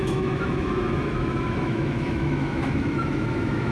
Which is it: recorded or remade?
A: remade